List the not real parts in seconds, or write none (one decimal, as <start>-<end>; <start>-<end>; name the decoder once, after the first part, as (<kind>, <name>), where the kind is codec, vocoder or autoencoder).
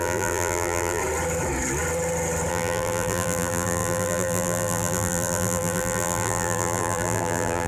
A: 0.0-1.0 (vocoder, BigVGAN v2); 2.5-7.7